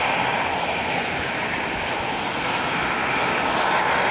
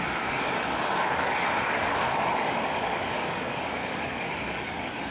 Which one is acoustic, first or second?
first